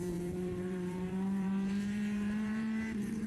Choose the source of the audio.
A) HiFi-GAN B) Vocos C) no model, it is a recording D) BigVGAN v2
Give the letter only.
D